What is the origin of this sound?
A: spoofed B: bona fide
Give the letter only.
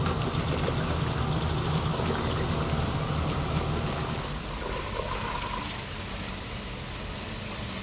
B